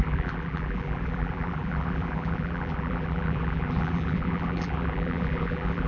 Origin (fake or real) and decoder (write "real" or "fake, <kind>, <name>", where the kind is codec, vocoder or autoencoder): fake, vocoder, BigVGAN v2